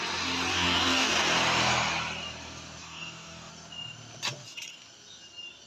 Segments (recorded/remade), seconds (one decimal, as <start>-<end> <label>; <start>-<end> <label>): 0.0-0.5 recorded; 0.5-1.1 remade; 1.1-2.8 recorded; 2.8-3.5 remade; 3.5-5.7 recorded